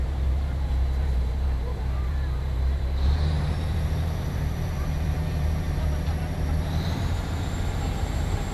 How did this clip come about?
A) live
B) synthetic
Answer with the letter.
B